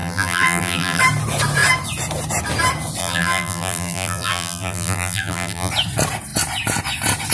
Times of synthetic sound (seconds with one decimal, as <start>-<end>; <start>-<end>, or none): 0.0-1.0; 3.0-5.7